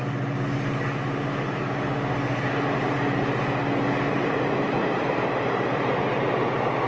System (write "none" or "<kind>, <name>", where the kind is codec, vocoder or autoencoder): none